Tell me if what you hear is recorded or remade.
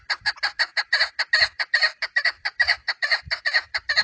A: recorded